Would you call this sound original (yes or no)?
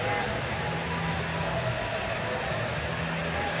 yes